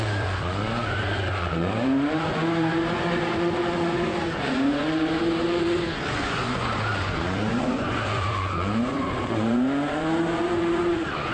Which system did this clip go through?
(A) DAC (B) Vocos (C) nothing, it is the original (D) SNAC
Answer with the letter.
B